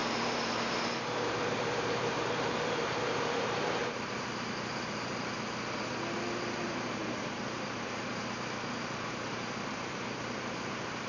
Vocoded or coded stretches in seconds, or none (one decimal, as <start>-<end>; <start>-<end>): 0.0-3.8; 7.2-11.1